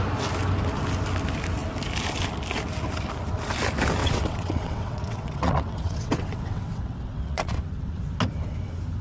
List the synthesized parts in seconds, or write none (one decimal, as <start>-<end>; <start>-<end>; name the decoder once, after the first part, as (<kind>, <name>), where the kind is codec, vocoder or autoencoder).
4.0-8.0 (vocoder, WaveNeXt)